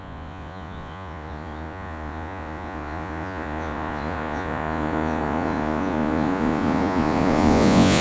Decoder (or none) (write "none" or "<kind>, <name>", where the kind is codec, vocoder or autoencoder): vocoder, Vocos